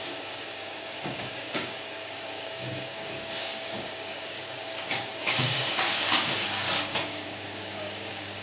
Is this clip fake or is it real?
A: fake